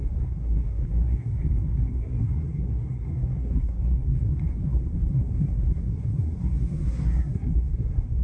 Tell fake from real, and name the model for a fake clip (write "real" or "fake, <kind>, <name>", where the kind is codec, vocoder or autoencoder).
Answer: fake, codec, SNAC